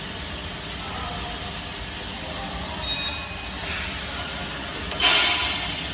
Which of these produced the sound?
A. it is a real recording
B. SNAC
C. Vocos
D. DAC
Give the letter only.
A